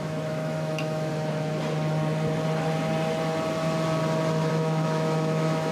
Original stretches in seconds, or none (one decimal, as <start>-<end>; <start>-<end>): 1.1-4.5